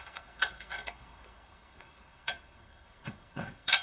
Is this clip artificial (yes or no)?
yes